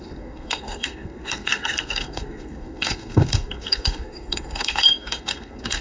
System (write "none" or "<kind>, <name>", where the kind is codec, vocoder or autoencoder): codec, SNAC